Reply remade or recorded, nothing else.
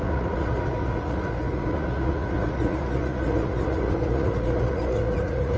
remade